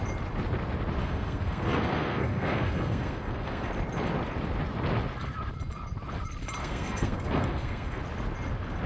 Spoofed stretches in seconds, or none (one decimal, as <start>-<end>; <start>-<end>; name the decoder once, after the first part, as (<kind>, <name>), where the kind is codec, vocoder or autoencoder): 1.0-3.7 (codec, SNAC); 6.6-8.0

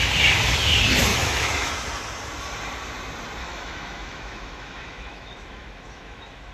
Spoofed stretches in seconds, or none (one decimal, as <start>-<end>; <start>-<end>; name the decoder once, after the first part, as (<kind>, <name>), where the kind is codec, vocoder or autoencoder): 1.1-1.7 (autoencoder, DAC-VAE); 3.4-6.5

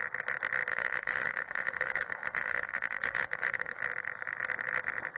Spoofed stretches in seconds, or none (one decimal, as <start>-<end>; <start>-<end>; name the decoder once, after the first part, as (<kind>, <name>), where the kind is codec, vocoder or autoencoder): 0.7-3.8 (autoencoder, DAC-VAE)